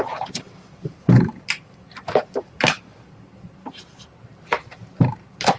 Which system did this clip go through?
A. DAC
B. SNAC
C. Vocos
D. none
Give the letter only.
D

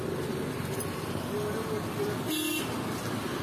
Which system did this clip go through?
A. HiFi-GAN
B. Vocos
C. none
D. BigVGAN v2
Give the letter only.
C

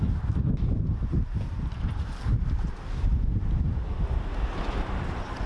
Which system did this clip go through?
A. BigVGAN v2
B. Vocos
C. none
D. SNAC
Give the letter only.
C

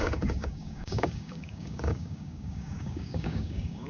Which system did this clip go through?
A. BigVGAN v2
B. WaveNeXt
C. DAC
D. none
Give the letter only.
C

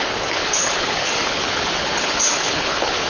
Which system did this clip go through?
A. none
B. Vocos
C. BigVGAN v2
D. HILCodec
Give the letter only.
D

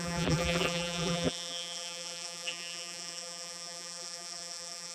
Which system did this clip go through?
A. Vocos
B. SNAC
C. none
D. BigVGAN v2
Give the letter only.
D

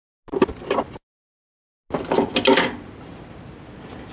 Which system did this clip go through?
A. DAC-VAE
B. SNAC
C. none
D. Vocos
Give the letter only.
C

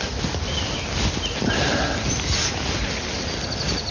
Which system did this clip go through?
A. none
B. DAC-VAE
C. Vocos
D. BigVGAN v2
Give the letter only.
A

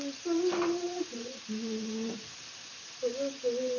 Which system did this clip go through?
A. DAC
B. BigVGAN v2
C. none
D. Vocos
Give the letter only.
B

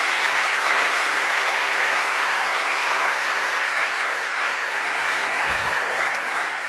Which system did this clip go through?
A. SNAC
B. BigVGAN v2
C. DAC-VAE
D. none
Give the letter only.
A